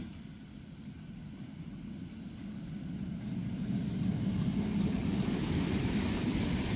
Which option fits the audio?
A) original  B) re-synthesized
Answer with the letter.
A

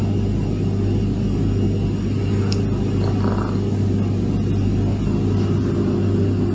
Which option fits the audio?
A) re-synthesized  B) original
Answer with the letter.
B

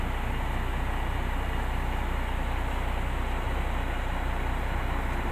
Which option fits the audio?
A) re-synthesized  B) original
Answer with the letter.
B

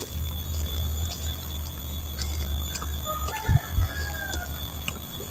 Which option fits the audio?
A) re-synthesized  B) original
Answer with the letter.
A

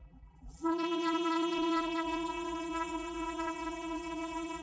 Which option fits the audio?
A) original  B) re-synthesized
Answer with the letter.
B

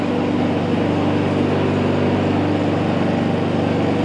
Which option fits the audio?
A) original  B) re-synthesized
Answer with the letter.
A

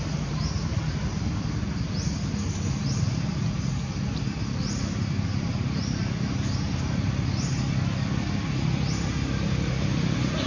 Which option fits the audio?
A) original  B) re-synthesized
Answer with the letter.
A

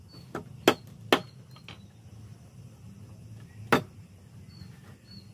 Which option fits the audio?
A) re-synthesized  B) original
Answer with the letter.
B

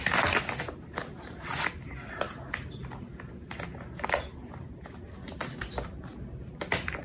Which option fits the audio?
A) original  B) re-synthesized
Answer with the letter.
A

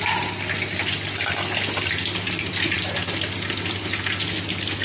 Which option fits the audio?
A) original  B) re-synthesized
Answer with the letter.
A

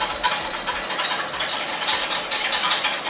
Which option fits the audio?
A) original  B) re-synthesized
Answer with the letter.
B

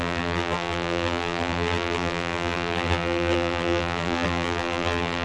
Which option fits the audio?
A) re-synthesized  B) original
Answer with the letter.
A